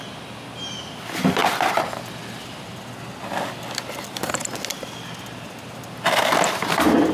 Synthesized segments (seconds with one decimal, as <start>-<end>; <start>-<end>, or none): none